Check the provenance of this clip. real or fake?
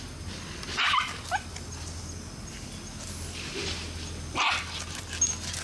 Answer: real